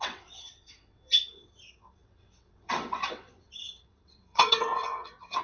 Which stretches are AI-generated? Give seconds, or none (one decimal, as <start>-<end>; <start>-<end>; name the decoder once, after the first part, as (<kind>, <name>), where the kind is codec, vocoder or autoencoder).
0.0-5.4 (vocoder, WaveNeXt)